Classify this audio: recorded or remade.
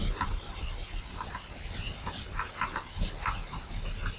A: recorded